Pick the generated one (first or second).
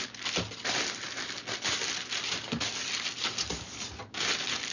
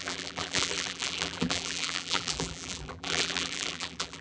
second